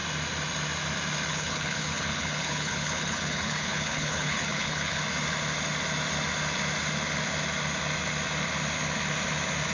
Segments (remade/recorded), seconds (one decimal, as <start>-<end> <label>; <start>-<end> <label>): 0.0-1.3 recorded; 1.3-5.0 remade; 5.0-9.7 recorded